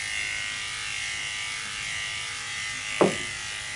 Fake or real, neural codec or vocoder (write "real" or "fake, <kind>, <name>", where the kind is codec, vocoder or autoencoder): real